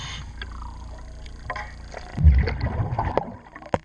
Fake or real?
real